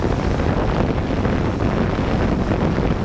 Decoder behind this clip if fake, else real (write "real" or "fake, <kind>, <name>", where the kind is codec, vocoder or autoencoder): real